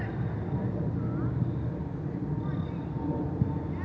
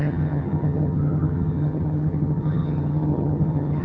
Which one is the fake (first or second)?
second